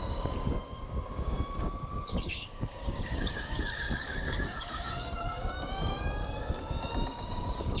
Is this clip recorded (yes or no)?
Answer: no